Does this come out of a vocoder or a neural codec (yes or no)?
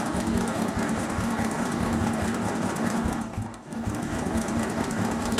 yes